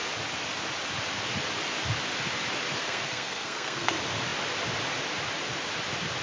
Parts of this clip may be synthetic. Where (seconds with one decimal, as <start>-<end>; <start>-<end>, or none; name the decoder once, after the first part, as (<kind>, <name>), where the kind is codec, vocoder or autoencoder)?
2.8-3.9 (codec, SNAC)